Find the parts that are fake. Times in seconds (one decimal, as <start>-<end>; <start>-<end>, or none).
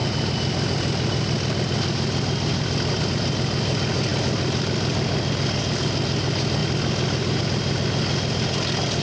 none